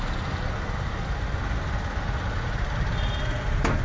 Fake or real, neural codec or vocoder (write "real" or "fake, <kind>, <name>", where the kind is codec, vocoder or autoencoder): real